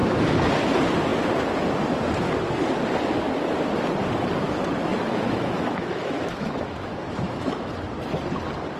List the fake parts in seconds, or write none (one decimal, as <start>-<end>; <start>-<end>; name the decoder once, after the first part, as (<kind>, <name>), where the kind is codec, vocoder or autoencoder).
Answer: 4.9-7.7 (autoencoder, DAC-VAE)